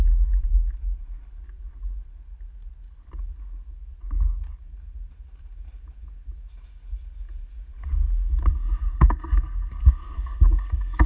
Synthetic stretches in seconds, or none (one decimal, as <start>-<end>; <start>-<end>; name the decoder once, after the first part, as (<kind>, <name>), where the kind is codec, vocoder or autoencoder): 8.5-11.1 (codec, SNAC)